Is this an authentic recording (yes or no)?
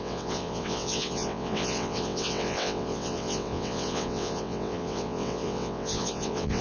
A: no